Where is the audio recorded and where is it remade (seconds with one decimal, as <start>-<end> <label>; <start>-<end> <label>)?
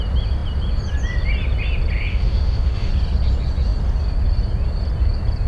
0.0-2.1 recorded; 2.1-2.9 remade; 2.9-5.5 recorded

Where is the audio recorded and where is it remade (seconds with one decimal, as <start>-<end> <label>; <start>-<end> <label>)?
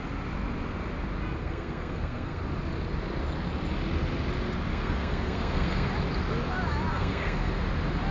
0.0-1.4 recorded; 1.4-2.4 remade; 2.4-4.7 recorded; 4.7-5.9 remade; 5.9-6.9 recorded; 6.9-7.5 remade; 7.5-8.1 recorded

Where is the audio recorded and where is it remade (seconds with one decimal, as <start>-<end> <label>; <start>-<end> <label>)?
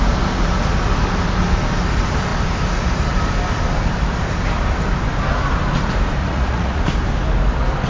0.0-6.2 recorded; 6.2-6.8 remade; 6.8-7.9 recorded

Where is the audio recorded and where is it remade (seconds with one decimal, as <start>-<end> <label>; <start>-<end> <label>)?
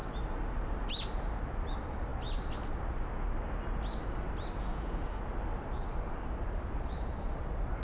0.0-4.6 recorded; 4.6-5.2 remade; 5.2-7.8 recorded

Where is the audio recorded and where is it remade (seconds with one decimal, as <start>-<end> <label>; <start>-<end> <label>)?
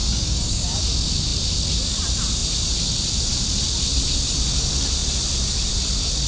0.0-0.8 remade; 0.8-6.3 recorded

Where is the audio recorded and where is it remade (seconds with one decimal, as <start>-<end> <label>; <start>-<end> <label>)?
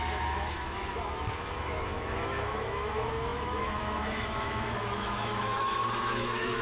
0.0-6.6 remade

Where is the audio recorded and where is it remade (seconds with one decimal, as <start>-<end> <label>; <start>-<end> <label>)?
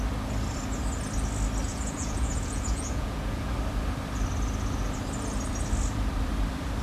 0.0-1.7 recorded; 1.7-3.5 remade; 3.5-6.8 recorded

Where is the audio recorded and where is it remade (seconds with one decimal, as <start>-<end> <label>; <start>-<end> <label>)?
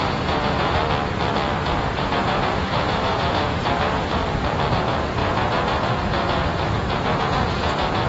0.0-0.8 remade; 0.8-1.6 recorded; 1.6-4.2 remade; 4.2-4.7 recorded; 4.7-8.1 remade